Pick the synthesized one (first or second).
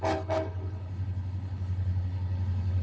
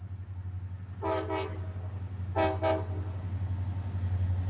first